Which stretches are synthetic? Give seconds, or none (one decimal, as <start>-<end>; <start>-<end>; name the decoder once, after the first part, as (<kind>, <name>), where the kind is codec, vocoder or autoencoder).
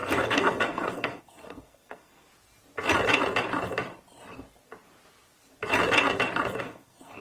0.0-2.3 (codec, SNAC); 6.6-7.2